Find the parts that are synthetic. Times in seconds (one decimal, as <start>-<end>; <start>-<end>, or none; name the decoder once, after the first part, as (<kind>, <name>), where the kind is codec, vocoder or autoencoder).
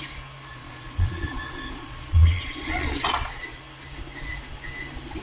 0.5-3.6 (vocoder, Vocos)